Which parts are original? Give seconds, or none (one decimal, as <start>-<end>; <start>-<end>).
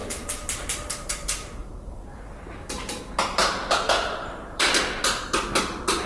3.0-3.4; 4.6-6.1